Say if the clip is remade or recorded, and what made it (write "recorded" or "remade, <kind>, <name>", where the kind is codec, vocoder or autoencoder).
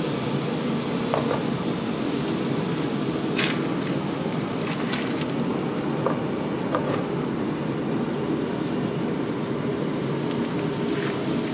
recorded